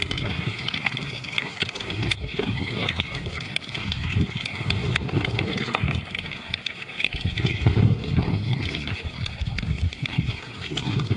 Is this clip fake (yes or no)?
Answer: yes